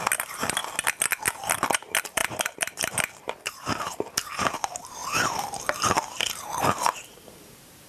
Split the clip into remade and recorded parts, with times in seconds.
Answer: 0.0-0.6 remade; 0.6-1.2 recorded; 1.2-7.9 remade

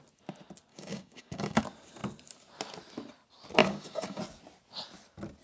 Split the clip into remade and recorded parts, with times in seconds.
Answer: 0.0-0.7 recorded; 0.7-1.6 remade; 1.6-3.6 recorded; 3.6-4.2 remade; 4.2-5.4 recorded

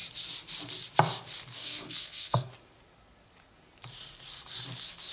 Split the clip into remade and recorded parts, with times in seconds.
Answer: 0.0-1.6 recorded; 1.6-2.5 remade; 2.5-5.1 recorded

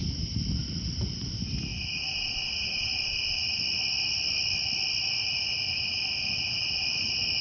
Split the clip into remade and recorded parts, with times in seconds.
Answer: 0.0-7.4 recorded

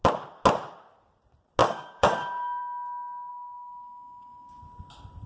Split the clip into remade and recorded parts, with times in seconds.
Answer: 0.0-1.6 recorded; 1.6-2.6 remade; 2.6-3.3 recorded; 3.3-4.6 remade; 4.6-5.3 recorded

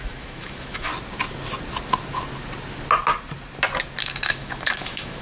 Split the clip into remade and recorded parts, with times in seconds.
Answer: 0.0-0.9 remade; 0.9-4.0 recorded; 4.0-5.2 remade